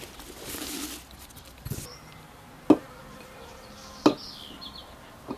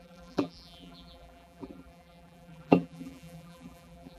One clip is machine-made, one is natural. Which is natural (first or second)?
first